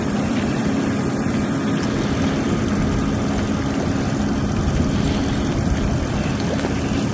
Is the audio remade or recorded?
recorded